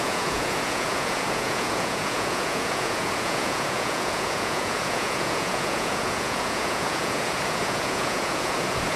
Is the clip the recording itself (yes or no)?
no